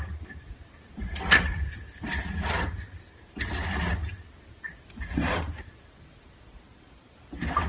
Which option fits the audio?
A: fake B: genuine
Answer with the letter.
B